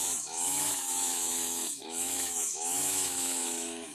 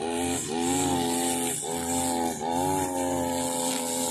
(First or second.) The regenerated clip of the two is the first